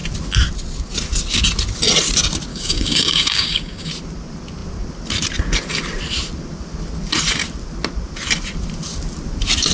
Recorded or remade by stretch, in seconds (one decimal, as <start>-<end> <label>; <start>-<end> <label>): 0.0-2.5 recorded; 2.5-3.9 remade; 3.9-9.7 recorded